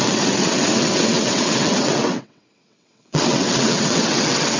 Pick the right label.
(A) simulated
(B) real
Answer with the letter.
A